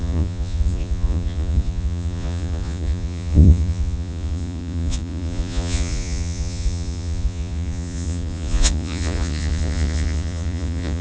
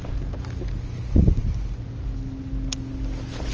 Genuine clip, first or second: second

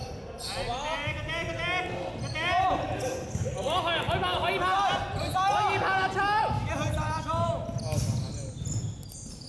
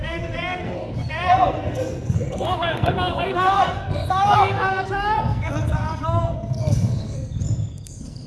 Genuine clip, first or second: first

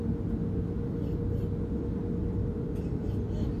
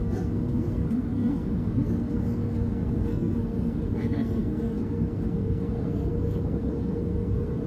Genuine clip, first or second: first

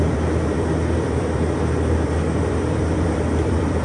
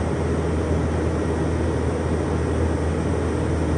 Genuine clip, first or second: second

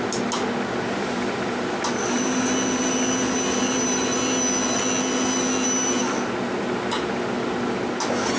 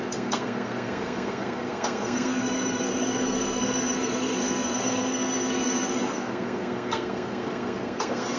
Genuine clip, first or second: first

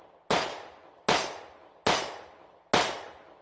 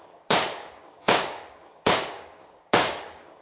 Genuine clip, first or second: first